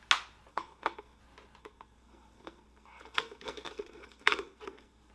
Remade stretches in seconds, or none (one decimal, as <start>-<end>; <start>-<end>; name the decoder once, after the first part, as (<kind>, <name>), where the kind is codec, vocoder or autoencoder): 0.5-1.2 (codec, SNAC); 1.6-5.1